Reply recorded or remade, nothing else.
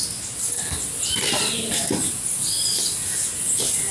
recorded